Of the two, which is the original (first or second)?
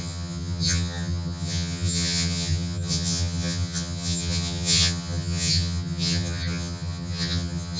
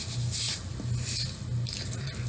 second